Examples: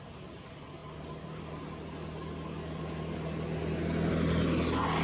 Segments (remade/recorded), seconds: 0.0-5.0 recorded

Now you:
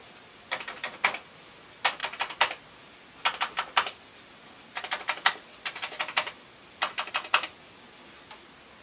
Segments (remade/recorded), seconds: 0.0-8.8 recorded

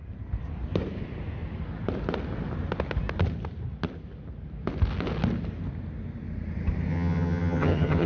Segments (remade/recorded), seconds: 0.0-6.9 recorded; 6.9-8.1 remade

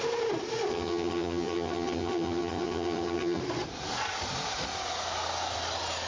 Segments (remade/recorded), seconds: 0.0-0.7 recorded; 0.7-3.4 remade; 3.4-6.1 recorded

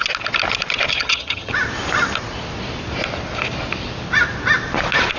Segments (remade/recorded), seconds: 0.0-0.9 recorded; 0.9-1.5 remade; 1.5-5.2 recorded

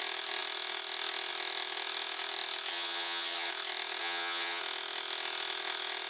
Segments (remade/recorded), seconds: 0.0-2.7 recorded; 2.7-3.5 remade; 3.5-4.0 recorded; 4.0-4.6 remade; 4.6-6.1 recorded

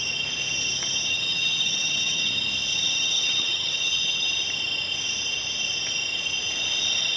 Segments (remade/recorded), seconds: 0.0-1.1 recorded; 1.1-2.3 remade; 2.3-2.7 recorded; 2.7-4.3 remade; 4.3-7.2 recorded

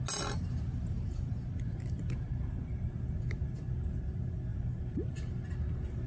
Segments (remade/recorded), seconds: 0.0-6.1 recorded